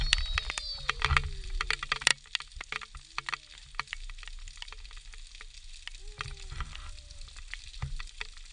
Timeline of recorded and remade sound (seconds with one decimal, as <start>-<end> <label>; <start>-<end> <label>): 0.0-2.1 remade; 2.1-6.0 recorded; 6.0-8.5 remade